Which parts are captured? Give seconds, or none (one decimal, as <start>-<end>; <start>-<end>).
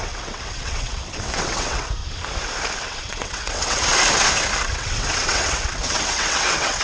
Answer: 2.0-2.8; 3.9-4.6